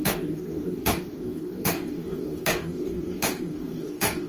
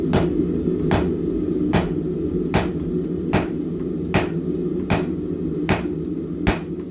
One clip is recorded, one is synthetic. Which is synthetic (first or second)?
first